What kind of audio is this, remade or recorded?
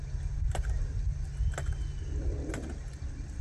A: recorded